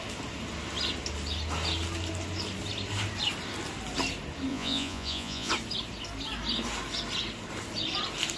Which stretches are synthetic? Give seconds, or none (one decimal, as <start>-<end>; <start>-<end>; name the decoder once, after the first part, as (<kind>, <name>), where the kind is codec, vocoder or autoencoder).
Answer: 4.5-5.5 (vocoder, Vocos)